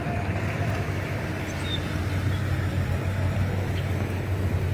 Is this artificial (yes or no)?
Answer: no